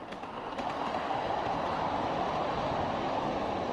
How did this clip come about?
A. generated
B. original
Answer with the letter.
B